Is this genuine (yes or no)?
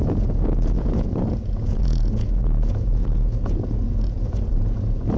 no